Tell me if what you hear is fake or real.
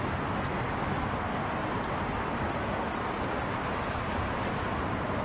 real